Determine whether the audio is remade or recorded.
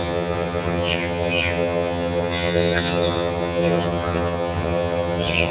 remade